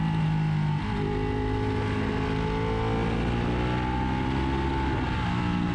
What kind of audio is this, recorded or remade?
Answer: recorded